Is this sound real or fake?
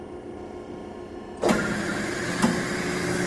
real